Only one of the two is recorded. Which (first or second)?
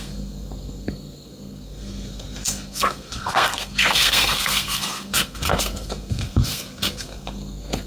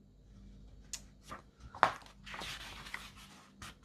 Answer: second